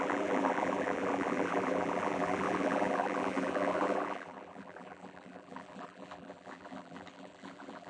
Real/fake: fake